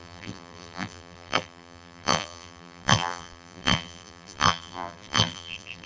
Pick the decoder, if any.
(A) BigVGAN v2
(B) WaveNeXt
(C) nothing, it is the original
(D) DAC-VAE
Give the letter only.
A